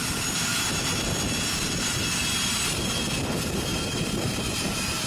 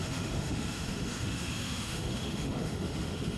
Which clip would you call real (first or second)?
first